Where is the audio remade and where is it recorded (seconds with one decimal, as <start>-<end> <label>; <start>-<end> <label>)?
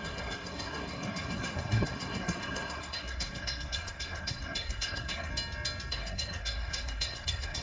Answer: 0.0-5.3 remade; 5.3-5.9 recorded; 5.9-7.6 remade